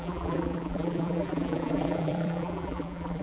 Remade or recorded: remade